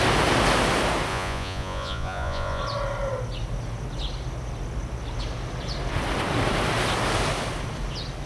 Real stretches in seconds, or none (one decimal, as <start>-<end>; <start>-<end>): 0.0-1.1; 2.6-8.3